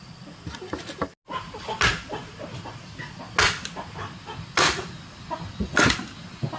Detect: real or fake real